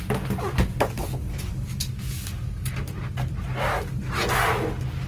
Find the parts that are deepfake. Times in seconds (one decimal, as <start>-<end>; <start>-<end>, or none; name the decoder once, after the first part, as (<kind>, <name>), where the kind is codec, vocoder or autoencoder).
1.5-2.7 (codec, DAC)